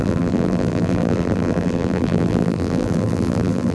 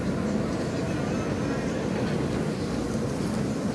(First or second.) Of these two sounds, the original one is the second